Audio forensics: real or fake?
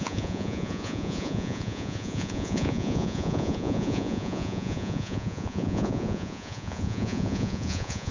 fake